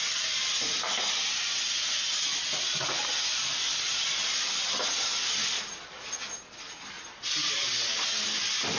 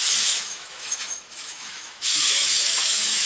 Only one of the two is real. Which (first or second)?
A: first